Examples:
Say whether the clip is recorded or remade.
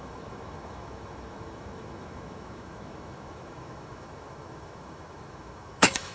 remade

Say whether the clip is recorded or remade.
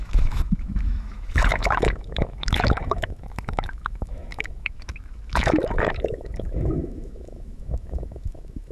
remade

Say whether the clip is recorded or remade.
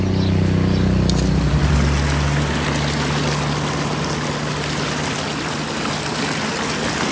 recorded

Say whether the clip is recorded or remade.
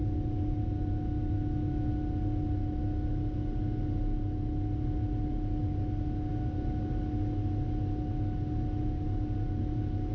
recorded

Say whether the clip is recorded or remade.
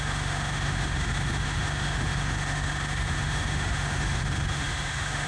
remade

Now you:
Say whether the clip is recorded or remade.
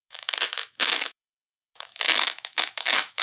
remade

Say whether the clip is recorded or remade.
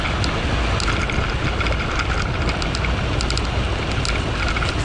recorded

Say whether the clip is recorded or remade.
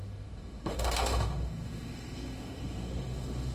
remade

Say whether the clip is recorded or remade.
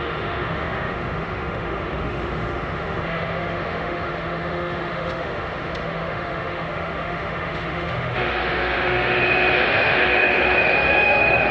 remade